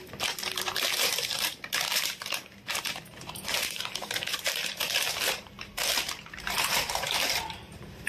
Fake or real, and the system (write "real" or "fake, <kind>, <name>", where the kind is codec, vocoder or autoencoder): fake, vocoder, BigVGAN v2